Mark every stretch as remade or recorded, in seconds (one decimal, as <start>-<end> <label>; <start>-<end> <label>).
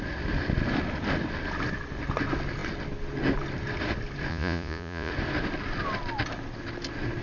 0.0-4.3 recorded; 4.3-5.1 remade; 5.1-7.2 recorded